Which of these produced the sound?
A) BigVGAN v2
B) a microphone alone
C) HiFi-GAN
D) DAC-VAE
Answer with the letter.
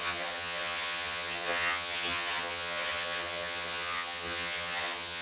C